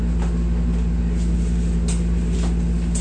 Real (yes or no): yes